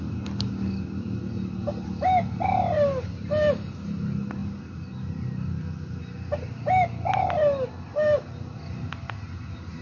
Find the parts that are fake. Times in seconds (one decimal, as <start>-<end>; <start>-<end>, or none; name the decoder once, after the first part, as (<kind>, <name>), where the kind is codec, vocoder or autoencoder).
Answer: none